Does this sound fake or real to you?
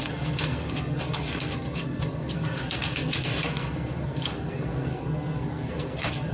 fake